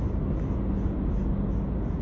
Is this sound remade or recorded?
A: recorded